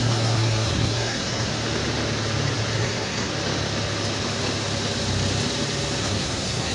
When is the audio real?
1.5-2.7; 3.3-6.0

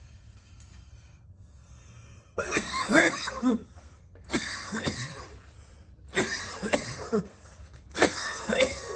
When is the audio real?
5.1-6.7

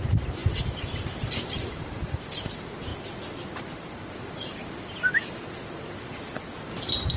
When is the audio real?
0.0-7.2